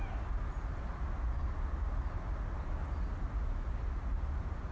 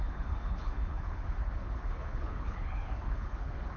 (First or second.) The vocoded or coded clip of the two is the second